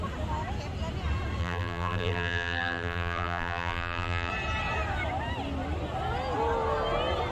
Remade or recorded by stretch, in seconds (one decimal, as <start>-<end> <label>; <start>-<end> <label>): 0.0-1.4 recorded; 1.4-4.3 remade; 4.3-7.3 recorded